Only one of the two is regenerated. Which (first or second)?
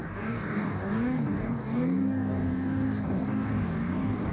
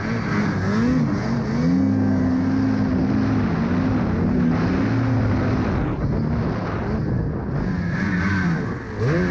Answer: first